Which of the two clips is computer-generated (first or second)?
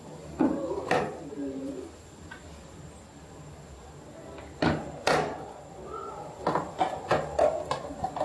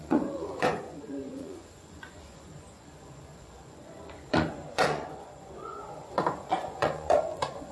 second